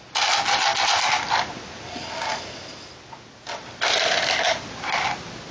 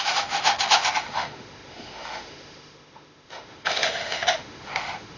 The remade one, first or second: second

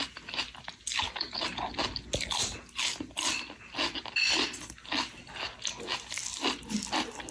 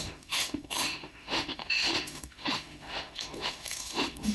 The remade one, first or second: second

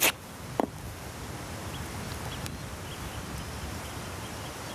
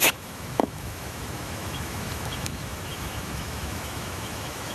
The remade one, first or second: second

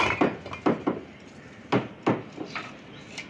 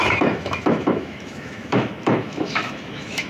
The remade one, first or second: second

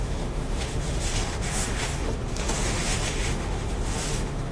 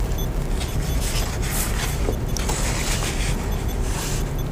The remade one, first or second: first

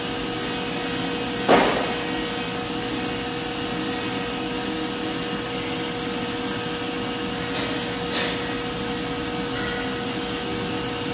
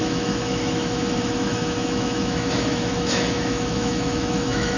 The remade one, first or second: second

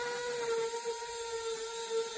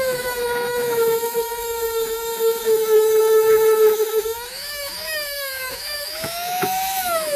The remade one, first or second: second